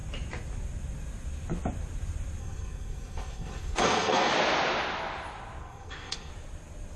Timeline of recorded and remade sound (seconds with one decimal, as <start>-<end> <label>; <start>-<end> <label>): 0.0-2.4 recorded; 2.4-4.3 remade; 4.3-5.6 recorded; 5.6-6.3 remade; 6.3-7.0 recorded